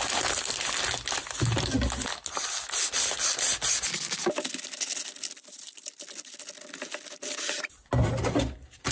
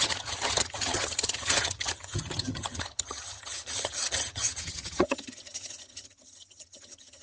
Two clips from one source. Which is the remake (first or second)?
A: second